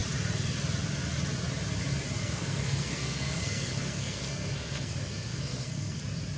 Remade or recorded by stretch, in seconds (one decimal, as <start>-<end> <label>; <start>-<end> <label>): 0.0-2.2 recorded; 2.2-6.0 remade; 6.0-6.4 recorded